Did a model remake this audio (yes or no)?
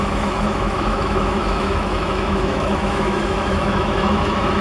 yes